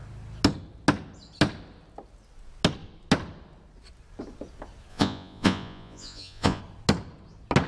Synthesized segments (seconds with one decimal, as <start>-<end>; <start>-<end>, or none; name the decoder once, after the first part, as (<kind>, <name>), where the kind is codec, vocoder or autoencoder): 4.9-6.6 (vocoder, Vocos)